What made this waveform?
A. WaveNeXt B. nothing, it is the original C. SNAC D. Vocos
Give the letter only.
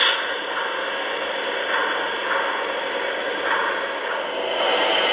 B